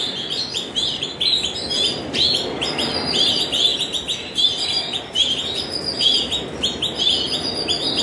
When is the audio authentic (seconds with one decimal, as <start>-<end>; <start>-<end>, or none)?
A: 0.0-8.0